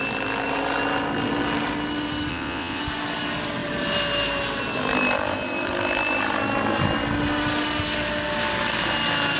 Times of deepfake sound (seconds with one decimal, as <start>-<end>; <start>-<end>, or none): 2.3-2.8

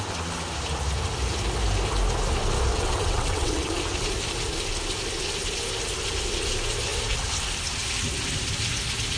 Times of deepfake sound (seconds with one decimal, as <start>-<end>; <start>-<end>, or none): 2.7-3.7

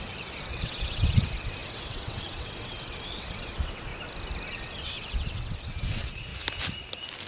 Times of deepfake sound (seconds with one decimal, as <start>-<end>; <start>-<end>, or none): 0.0-3.9; 4.5-6.3

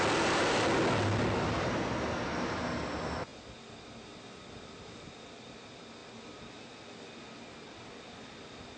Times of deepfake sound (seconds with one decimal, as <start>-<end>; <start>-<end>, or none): none

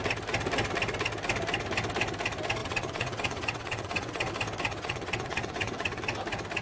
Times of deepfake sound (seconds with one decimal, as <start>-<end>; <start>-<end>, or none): 2.6-4.3; 4.7-6.0

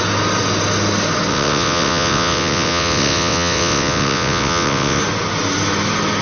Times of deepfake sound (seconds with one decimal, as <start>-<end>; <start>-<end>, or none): 1.3-5.0

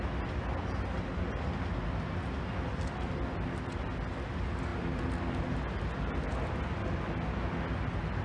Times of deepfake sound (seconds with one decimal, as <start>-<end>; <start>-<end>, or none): none

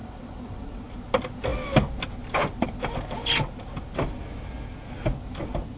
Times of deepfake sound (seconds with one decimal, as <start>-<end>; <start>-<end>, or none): 0.0-0.8